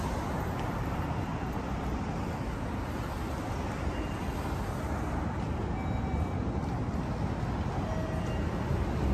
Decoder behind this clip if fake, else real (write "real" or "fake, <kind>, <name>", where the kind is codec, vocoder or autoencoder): real